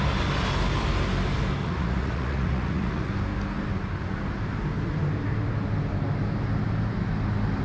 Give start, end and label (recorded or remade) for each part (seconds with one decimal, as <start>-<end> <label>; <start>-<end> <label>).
0.0-1.6 recorded; 1.6-3.1 remade; 3.1-7.6 recorded